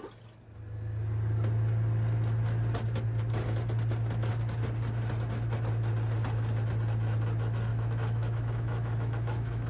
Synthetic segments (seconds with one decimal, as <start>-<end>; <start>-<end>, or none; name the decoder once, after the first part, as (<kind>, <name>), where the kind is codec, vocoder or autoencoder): 7.7-9.7 (autoencoder, DAC-VAE)